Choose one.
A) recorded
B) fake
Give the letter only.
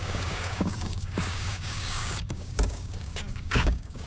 B